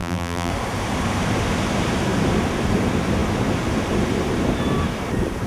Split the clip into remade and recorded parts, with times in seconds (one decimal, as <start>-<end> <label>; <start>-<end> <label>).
0.0-0.5 remade; 0.5-5.5 recorded